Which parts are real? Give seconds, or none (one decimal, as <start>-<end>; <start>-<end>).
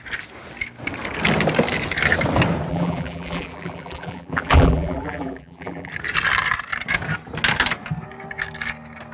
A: 0.0-2.7; 5.9-9.1